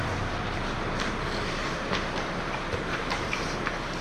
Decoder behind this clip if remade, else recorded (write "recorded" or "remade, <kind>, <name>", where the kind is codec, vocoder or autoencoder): remade, vocoder, BigVGAN v2